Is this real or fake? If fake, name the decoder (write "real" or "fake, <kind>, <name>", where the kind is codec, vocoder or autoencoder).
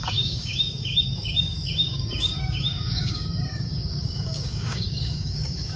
fake, codec, DAC